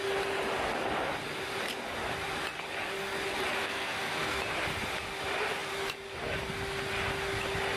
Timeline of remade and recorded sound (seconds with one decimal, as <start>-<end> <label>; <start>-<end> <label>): 0.0-3.6 recorded; 3.6-4.4 remade; 4.4-7.8 recorded